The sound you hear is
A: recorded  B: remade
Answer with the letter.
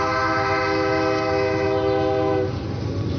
A